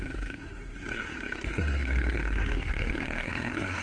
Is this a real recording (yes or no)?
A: no